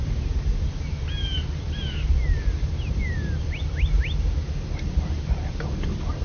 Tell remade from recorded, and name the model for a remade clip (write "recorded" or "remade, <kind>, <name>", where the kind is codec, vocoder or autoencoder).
recorded